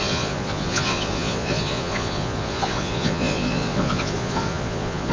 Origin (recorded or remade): remade